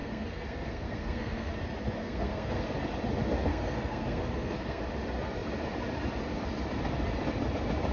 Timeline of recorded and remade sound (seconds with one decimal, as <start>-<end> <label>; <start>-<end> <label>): 0.0-1.5 remade; 1.5-2.0 recorded; 2.0-2.7 remade; 2.7-3.5 recorded; 3.5-4.8 remade; 4.8-7.9 recorded